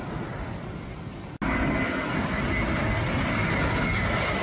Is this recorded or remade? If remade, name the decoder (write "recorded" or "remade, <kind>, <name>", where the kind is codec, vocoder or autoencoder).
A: recorded